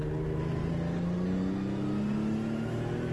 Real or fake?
real